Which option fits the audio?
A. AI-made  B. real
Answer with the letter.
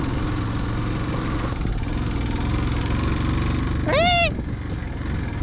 B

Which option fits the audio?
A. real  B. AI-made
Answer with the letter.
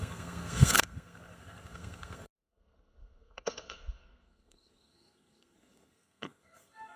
B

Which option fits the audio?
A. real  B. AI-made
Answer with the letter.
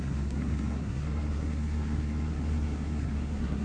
B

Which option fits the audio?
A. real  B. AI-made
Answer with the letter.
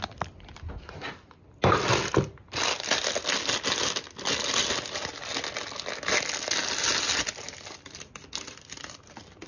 A